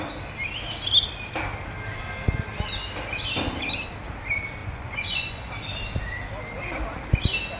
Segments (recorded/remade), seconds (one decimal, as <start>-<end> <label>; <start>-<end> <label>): 0.0-4.6 recorded; 4.6-5.5 remade; 5.5-7.6 recorded